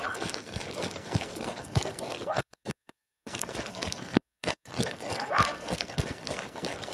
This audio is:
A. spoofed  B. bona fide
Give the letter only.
A